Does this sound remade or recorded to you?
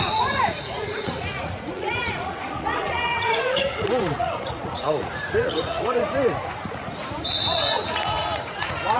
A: remade